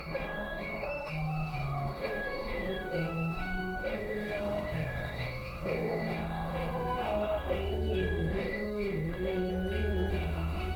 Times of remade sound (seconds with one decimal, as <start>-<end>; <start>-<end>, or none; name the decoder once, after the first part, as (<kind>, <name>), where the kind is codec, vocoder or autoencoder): 0.0-9.5 (autoencoder, DAC-VAE); 10.1-10.8